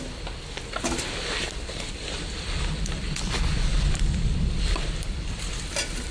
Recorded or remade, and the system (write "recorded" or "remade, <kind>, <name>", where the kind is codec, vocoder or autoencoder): remade, vocoder, BigVGAN v2